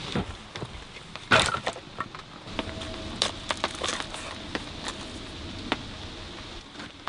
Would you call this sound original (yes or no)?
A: yes